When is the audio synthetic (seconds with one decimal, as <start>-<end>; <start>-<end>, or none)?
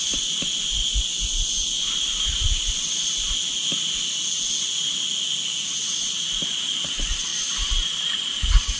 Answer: none